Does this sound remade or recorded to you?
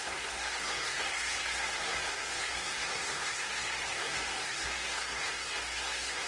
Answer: remade